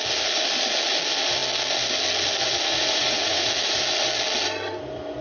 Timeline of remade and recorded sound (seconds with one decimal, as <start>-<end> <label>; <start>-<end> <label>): 0.0-2.7 recorded; 2.7-3.5 remade; 3.5-5.2 recorded